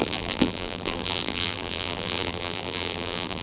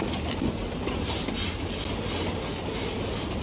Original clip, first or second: second